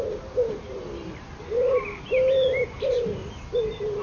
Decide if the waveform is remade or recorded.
recorded